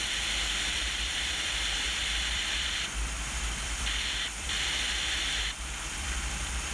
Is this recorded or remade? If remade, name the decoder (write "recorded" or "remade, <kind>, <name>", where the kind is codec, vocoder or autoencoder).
remade, vocoder, BigVGAN v2